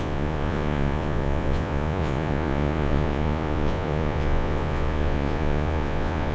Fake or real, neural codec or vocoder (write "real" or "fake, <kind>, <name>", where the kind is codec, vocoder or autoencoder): fake, vocoder, Vocos